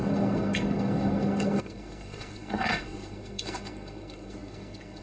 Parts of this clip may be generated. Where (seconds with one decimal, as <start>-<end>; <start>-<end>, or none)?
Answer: 0.0-5.0